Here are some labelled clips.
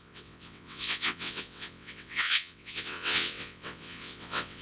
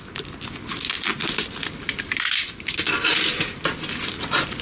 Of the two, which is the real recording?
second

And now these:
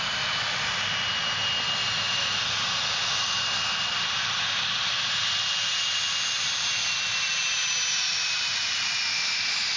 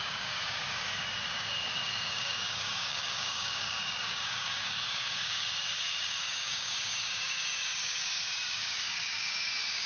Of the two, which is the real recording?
first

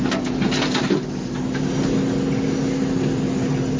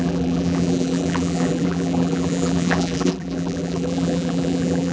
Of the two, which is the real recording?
first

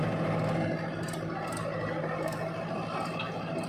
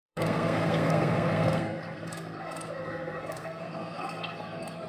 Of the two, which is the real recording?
first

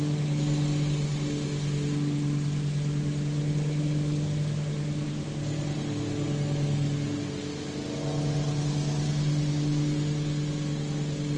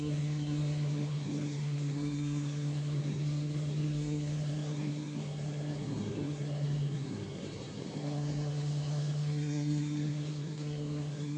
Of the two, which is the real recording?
first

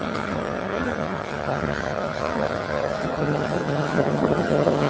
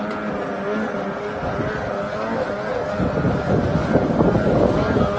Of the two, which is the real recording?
second